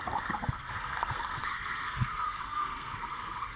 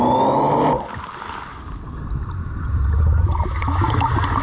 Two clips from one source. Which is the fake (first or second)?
first